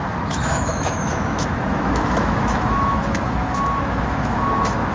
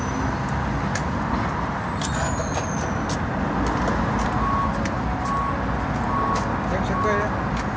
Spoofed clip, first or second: first